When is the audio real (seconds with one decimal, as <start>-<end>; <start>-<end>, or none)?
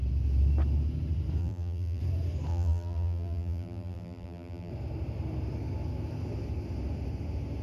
0.0-1.4; 2.0-2.5; 4.7-7.6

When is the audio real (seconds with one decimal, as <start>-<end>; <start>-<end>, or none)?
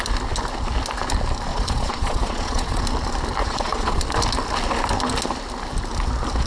0.0-1.5; 2.8-3.4; 4.0-6.5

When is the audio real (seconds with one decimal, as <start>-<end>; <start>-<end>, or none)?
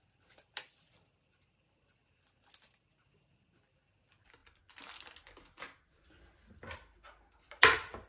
0.0-8.1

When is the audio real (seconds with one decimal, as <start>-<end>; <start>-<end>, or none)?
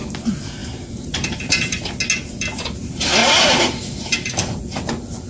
0.0-0.6; 1.9-3.2; 4.6-5.3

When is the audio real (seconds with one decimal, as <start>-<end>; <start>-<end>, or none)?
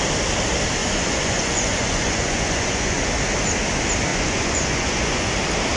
0.0-0.8; 3.1-4.1; 5.3-5.8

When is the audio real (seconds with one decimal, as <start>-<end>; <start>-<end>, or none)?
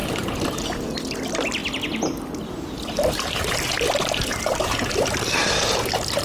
0.6-6.2